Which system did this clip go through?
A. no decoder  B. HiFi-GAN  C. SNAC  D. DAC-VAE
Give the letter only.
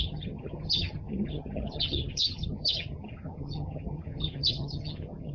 B